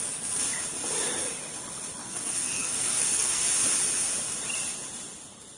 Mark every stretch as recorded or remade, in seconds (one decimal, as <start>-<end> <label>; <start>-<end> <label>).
0.0-2.0 recorded; 2.0-3.5 remade; 3.5-5.6 recorded